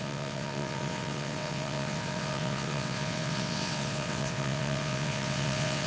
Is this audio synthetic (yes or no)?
yes